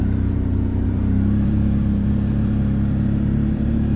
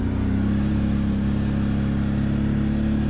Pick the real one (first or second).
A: second